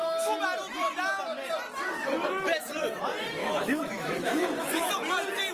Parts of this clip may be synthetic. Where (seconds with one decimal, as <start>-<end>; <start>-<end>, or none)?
3.4-4.9